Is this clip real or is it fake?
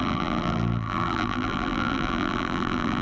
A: fake